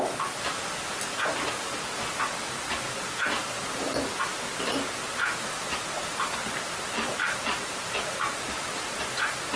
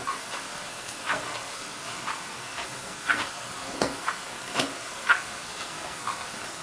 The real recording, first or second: first